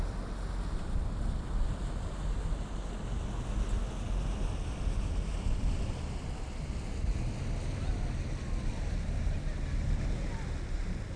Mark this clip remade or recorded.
recorded